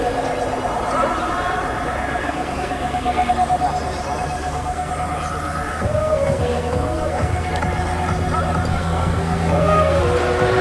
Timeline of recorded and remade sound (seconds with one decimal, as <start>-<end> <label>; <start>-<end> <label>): 0.0-2.2 recorded; 2.2-3.3 remade; 3.3-4.4 recorded; 4.4-4.9 remade; 4.9-5.7 recorded; 5.7-7.5 remade; 7.5-8.7 recorded; 8.7-10.0 remade; 10.0-10.6 recorded